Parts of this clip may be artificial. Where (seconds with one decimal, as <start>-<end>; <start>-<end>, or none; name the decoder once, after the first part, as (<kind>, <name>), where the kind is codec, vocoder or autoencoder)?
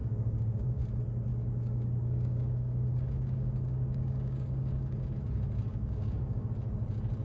0.0-0.8 (codec, DAC); 1.3-5.2; 5.7-6.5